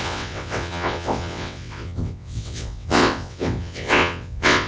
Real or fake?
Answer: fake